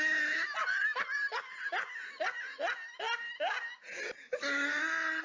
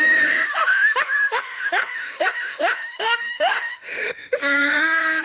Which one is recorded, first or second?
first